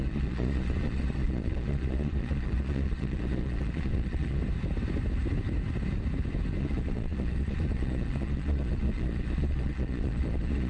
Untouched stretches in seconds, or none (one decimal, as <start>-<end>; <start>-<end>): 4.4-6.6